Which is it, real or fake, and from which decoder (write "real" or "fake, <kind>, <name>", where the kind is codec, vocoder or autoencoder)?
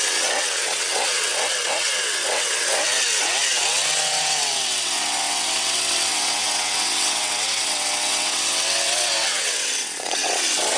fake, vocoder, WaveNeXt